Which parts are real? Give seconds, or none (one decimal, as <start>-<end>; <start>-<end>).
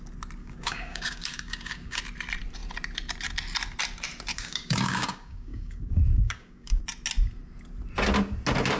0.0-0.4; 2.0-4.3; 6.8-8.8